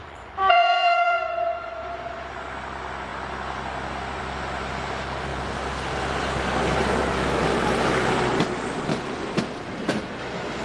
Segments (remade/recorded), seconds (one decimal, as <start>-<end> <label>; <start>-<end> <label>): 0.0-1.7 remade; 1.7-8.9 recorded; 8.9-9.4 remade; 9.4-10.6 recorded